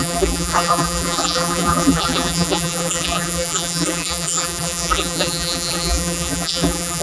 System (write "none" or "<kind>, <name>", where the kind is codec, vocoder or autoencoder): vocoder, BigVGAN v2